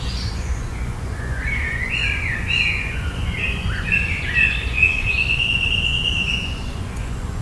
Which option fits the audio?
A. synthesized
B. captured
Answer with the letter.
A